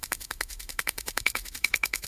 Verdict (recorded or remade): remade